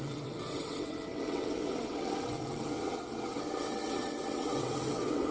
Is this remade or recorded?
remade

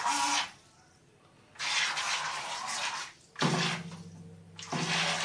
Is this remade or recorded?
recorded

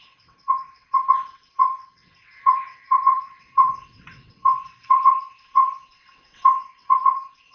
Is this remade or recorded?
remade